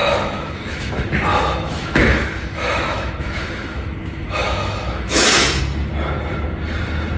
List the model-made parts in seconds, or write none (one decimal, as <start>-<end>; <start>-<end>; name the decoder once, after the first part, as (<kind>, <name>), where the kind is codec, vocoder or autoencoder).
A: 0.0-0.9 (autoencoder, DAC-VAE); 1.3-5.6

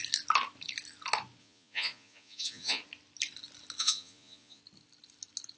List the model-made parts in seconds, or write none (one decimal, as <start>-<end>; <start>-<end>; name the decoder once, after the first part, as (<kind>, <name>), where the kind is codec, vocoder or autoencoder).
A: 1.4-2.8 (vocoder, Vocos); 3.8-4.6

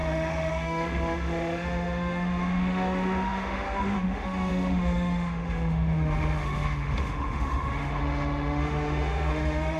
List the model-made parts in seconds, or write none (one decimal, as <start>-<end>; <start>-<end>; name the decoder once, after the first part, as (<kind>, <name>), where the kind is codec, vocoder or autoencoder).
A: 0.0-9.8 (autoencoder, DAC-VAE)

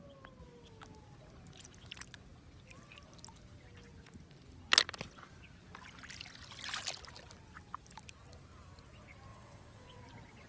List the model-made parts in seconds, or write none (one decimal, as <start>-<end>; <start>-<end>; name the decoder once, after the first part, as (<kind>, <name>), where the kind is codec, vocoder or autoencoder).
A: 9.3-10.0 (vocoder, WaveNeXt)

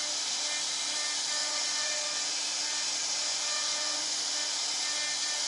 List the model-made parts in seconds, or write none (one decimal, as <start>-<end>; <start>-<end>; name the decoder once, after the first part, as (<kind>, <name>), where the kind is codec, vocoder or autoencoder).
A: 1.4-2.0 (vocoder, Vocos); 3.3-4.2